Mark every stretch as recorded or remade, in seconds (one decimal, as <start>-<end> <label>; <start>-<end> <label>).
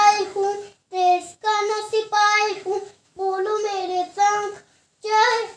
0.0-0.8 recorded; 0.8-3.6 remade; 3.6-5.6 recorded